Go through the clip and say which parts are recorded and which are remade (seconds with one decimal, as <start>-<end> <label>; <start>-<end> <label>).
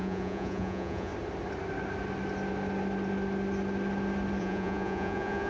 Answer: 0.0-1.1 remade; 1.1-4.4 recorded; 4.4-5.5 remade